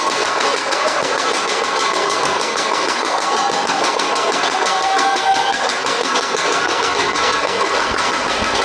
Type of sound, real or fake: fake